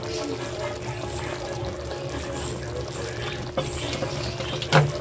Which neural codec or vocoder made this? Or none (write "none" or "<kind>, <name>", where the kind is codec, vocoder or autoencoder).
none